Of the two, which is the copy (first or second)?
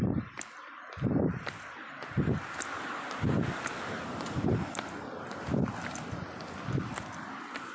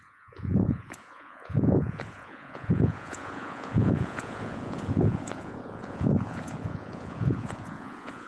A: second